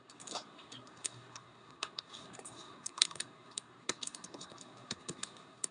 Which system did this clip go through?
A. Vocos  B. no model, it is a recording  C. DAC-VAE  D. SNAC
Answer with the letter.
D